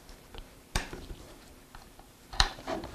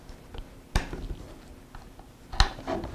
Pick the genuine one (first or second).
second